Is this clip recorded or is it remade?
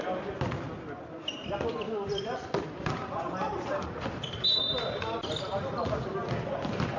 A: recorded